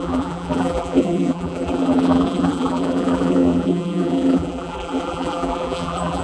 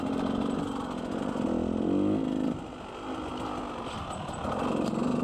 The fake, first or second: first